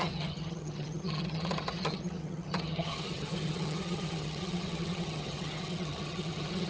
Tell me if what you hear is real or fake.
fake